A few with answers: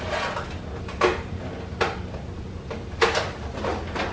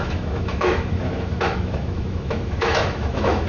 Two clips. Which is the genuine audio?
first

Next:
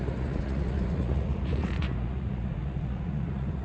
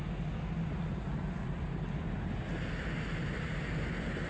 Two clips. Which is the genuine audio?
second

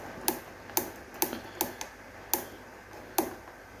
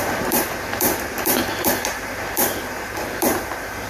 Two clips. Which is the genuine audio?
first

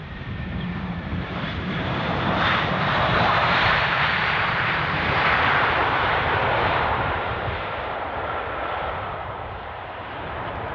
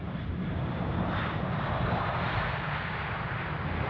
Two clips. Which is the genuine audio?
second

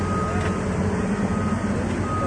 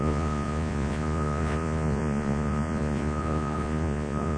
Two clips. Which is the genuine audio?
first